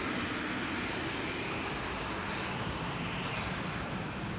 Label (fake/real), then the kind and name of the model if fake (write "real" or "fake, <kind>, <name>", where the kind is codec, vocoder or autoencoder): real